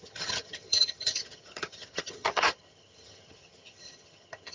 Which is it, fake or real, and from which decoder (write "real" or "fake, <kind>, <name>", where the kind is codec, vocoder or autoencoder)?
fake, vocoder, HiFi-GAN